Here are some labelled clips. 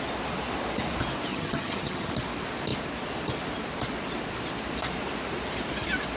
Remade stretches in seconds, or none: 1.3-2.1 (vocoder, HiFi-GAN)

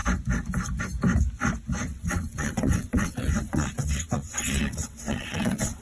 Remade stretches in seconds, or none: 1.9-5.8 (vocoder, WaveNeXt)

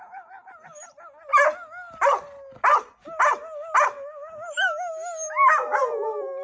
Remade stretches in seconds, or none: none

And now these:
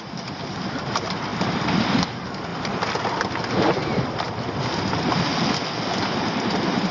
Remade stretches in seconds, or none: 0.0-2.5 (vocoder, BigVGAN v2); 3.2-5.3; 6.0-6.9